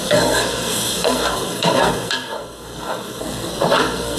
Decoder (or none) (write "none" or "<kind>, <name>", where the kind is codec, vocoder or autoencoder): codec, SNAC